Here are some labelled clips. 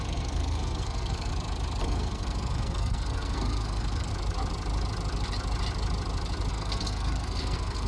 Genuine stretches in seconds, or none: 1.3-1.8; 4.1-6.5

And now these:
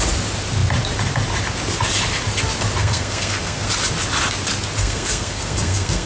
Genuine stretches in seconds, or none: 0.0-2.8; 3.7-4.8